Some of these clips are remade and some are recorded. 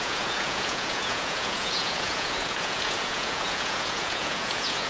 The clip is remade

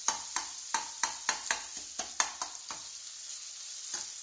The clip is recorded